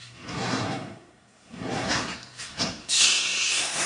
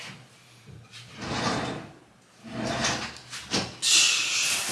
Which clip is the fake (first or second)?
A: first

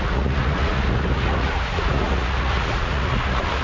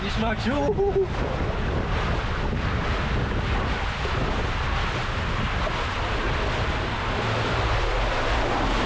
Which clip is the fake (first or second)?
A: first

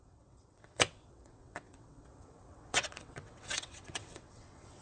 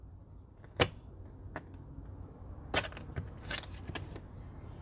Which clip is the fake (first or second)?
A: first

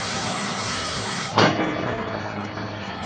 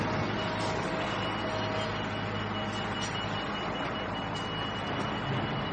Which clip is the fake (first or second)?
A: first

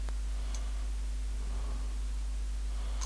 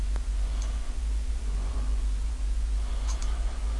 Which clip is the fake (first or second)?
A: second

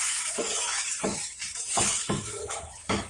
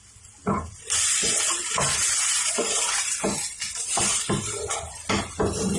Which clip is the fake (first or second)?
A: first